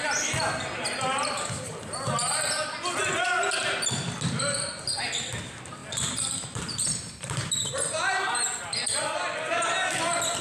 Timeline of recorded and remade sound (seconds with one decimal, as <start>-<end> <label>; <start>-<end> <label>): 0.0-5.8 recorded; 5.8-7.7 remade; 7.7-10.4 recorded